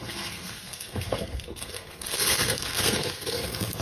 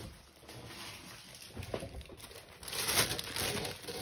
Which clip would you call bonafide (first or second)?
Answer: second